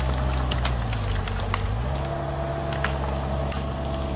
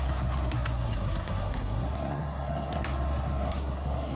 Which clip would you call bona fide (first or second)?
first